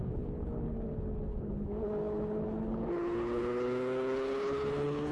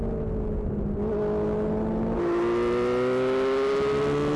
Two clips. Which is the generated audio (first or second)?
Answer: first